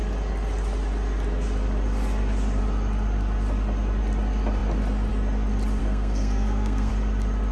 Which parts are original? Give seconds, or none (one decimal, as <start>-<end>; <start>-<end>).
0.0-5.8; 6.9-7.5